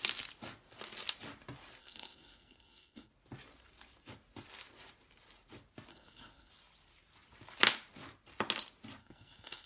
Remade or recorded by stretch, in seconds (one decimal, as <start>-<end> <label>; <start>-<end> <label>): 0.0-1.8 recorded; 1.8-3.1 remade; 3.1-5.9 recorded; 5.9-6.5 remade; 6.5-9.0 recorded; 9.0-9.7 remade